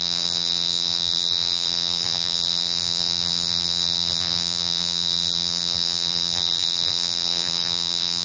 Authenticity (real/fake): fake